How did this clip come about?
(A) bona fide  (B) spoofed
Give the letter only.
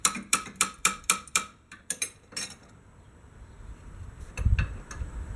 B